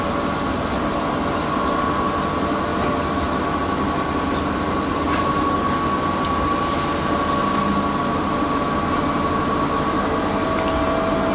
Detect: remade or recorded recorded